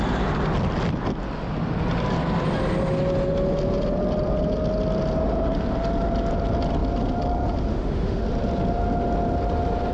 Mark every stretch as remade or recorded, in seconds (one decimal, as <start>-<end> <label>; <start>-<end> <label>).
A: 0.0-7.7 recorded; 7.7-8.2 remade; 8.2-9.9 recorded